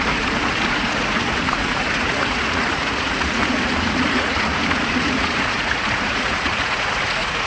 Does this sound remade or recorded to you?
remade